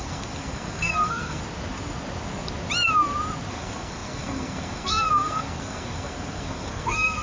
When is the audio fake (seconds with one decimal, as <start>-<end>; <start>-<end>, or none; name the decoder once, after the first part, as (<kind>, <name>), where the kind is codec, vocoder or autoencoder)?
0.0-1.4 (codec, SNAC); 3.5-7.2